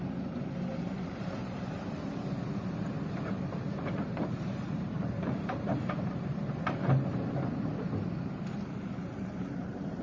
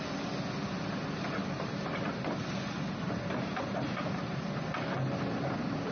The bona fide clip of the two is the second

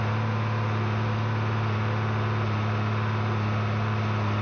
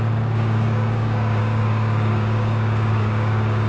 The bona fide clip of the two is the first